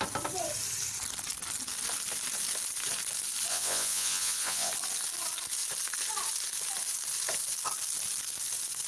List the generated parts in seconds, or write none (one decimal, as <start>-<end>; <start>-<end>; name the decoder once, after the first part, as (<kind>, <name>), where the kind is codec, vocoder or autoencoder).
3.5-4.7 (vocoder, Vocos)